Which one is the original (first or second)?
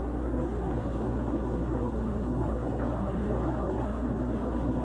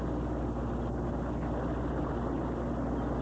second